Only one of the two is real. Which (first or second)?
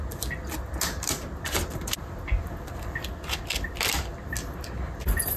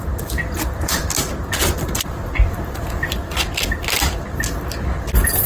first